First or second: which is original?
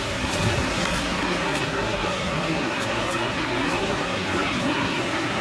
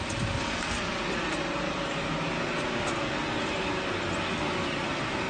second